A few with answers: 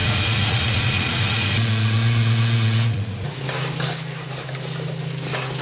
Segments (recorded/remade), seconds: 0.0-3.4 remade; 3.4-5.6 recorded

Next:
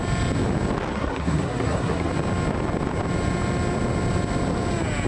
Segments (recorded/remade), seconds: 0.0-0.9 recorded; 0.9-2.1 remade; 2.1-5.1 recorded

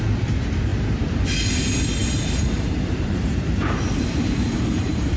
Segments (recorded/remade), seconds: 0.0-2.0 recorded; 2.0-5.2 remade

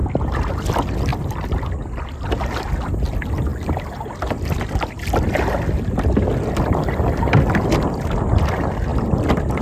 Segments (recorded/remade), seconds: 0.0-0.5 remade; 0.5-1.1 recorded; 1.1-1.7 remade; 1.7-9.6 recorded